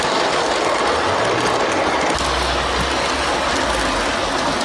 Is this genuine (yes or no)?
yes